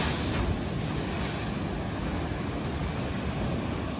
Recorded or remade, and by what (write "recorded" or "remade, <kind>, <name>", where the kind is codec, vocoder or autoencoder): recorded